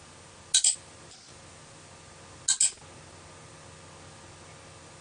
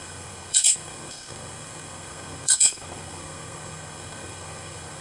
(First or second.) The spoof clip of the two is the second